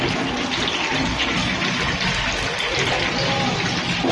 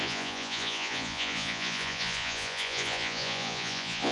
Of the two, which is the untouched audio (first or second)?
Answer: first